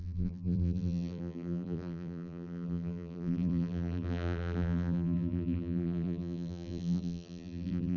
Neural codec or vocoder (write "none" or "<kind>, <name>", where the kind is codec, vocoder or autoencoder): vocoder, BigVGAN v2